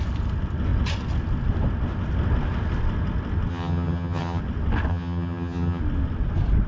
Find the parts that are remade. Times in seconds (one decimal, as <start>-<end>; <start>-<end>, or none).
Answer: 3.5-4.4; 4.9-5.8